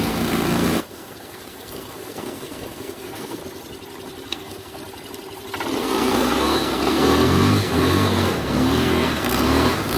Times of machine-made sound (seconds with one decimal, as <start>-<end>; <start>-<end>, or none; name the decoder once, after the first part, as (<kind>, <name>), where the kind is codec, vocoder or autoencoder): 0.0-3.4 (codec, SNAC); 4.3-4.8; 5.8-10.0